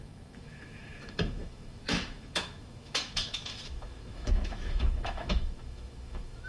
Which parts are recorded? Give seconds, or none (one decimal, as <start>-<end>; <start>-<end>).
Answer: none